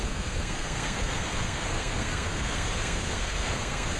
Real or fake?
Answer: fake